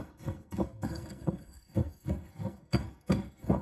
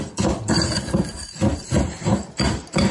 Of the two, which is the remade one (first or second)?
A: first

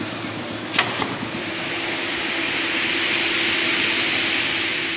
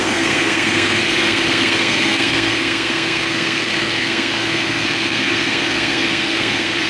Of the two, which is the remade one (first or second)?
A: second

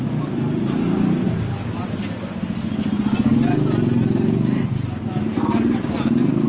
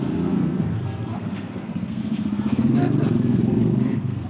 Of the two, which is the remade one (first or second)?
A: second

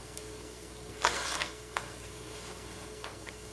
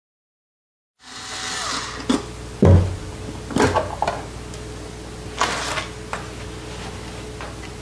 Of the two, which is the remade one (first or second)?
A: first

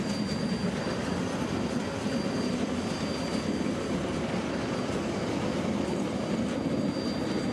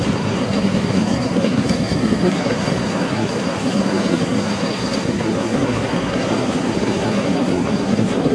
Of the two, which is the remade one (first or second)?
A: second